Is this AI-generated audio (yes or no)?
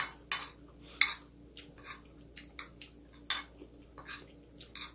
no